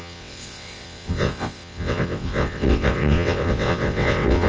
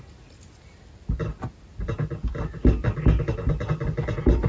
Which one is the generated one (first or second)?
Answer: first